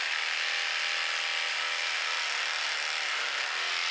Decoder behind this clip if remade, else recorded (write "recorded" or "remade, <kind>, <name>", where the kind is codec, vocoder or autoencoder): recorded